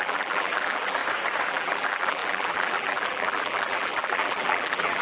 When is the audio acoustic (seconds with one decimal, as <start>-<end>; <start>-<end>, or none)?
1.0-1.5